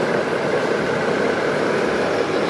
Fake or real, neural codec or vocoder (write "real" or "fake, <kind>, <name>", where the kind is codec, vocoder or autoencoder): real